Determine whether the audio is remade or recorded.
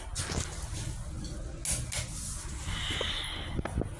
recorded